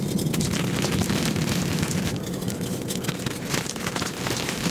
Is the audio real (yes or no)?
yes